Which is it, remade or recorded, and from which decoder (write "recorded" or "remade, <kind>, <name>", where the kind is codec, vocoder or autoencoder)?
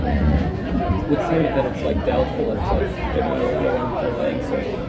remade, vocoder, Vocos